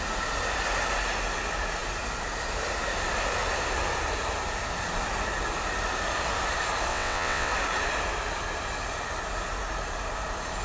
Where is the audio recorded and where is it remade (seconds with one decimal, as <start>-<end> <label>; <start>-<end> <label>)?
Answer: 0.0-6.9 recorded; 6.9-7.5 remade; 7.5-10.6 recorded